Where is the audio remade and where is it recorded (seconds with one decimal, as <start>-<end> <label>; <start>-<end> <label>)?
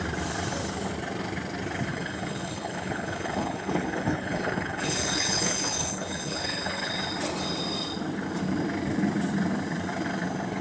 0.0-1.9 recorded; 1.9-6.9 remade; 6.9-10.6 recorded